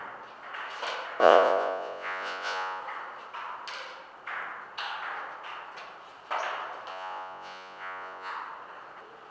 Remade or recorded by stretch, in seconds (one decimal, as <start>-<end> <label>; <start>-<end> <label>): 0.0-1.2 recorded; 1.2-2.8 remade; 2.8-6.9 recorded; 6.9-8.3 remade; 8.3-9.3 recorded